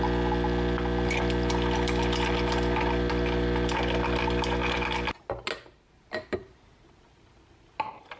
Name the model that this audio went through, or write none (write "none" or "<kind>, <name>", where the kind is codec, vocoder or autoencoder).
none